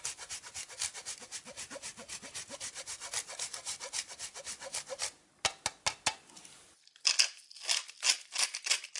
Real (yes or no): yes